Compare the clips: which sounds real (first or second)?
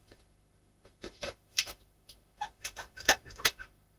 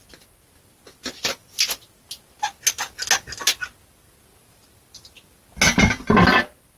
second